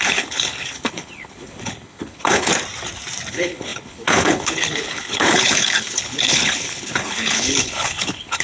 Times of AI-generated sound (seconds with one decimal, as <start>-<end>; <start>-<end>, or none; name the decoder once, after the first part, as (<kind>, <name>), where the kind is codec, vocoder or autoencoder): 0.0-2.5 (codec, HILCodec); 3.3-8.4